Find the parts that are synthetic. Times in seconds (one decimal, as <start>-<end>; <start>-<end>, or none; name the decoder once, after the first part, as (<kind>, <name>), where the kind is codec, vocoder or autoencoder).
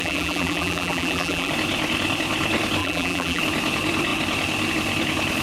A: 0.0-1.5 (vocoder, BigVGAN v2); 2.8-3.4